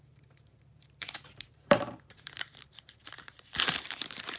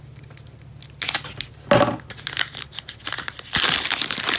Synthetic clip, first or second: first